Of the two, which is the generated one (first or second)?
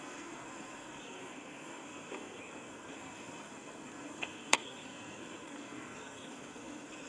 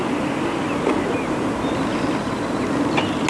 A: first